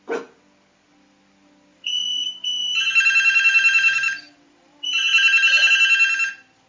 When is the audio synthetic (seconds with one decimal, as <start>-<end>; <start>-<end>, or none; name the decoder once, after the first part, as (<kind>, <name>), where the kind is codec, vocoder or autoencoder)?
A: 1.7-5.7 (vocoder, BigVGAN v2)